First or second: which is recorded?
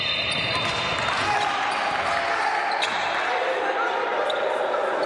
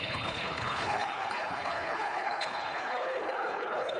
first